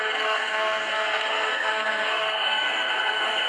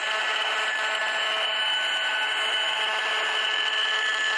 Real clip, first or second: second